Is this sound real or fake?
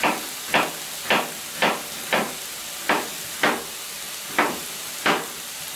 real